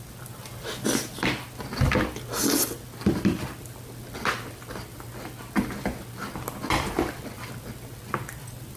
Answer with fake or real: real